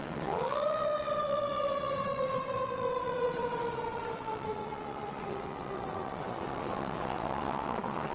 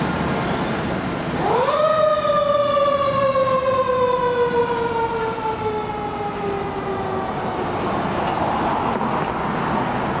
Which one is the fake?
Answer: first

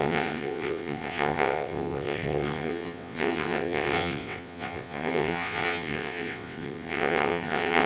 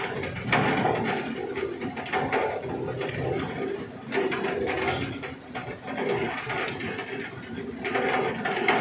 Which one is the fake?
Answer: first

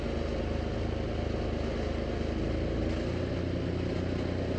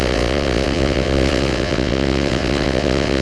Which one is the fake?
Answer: second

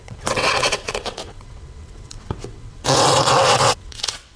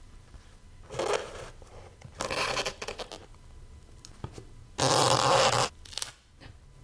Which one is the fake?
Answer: first